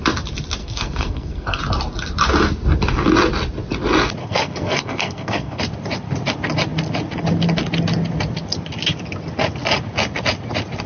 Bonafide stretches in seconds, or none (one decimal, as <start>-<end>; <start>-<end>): 0.0-0.6; 1.6-4.2; 5.6-10.9